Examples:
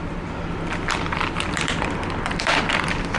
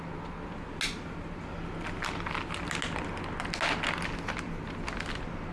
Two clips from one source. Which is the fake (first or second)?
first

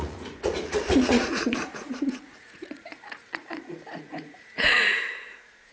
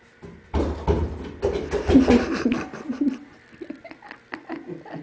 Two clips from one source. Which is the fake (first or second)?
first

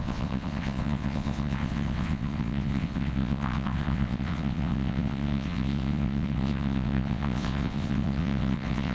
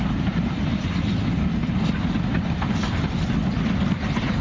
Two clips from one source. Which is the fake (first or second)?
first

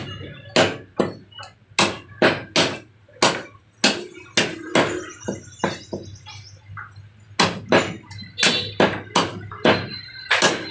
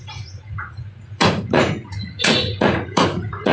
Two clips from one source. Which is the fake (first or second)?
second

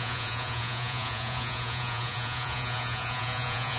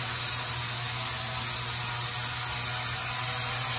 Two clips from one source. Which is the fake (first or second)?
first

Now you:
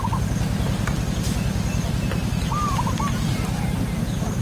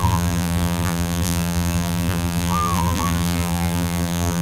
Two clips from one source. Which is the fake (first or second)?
second